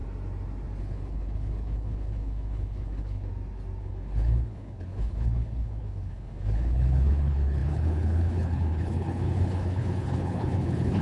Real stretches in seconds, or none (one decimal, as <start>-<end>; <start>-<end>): 0.0-0.8; 3.3-3.8